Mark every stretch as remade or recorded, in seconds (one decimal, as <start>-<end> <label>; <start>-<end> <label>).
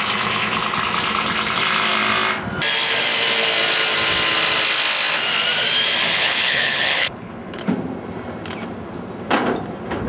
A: 0.0-6.1 recorded; 6.1-7.7 remade; 7.7-10.1 recorded